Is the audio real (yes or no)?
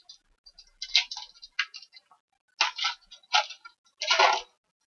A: yes